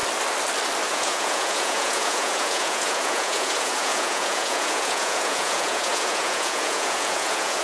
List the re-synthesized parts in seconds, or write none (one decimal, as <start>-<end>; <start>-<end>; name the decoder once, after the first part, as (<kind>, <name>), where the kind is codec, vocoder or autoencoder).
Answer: 0.9-7.6 (vocoder, Vocos)